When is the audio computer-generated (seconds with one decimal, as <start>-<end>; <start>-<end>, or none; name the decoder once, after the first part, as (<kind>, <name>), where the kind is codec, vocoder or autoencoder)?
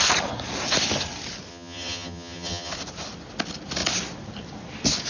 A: 1.5-2.7 (vocoder, HiFi-GAN)